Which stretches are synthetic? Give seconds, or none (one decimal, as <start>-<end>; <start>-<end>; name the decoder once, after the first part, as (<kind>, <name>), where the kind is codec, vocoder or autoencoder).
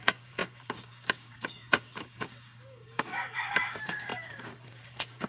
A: 0.0-5.3 (codec, DAC)